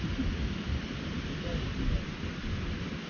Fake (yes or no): no